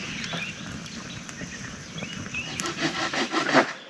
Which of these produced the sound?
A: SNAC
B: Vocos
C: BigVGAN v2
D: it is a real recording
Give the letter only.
D